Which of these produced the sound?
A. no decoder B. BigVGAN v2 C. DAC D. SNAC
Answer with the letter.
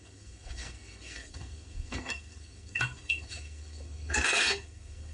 D